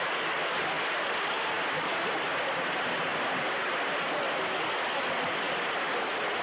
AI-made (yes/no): yes